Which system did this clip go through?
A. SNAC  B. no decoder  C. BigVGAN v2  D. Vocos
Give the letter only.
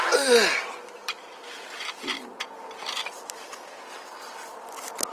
B